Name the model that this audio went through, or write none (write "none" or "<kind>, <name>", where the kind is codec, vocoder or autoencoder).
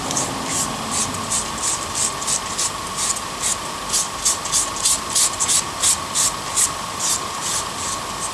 none